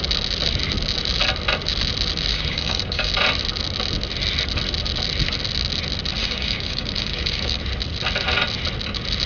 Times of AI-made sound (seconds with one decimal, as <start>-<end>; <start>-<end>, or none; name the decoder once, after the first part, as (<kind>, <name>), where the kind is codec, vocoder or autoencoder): 2.3-3.1 (codec, DAC); 6.2-7.6